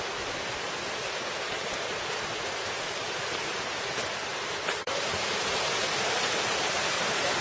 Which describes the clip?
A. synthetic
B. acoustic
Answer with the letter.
A